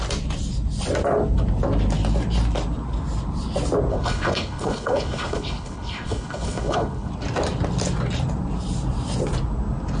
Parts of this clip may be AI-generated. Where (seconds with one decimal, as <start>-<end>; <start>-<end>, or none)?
3.9-7.1